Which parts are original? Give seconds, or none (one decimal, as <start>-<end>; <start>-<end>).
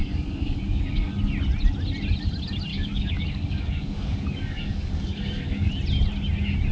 1.1-2.7; 5.7-6.7